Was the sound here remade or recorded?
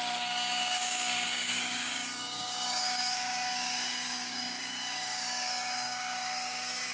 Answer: remade